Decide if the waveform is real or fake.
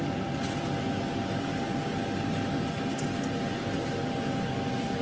real